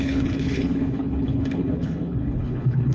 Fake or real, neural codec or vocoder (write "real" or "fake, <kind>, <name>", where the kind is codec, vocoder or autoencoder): fake, codec, HILCodec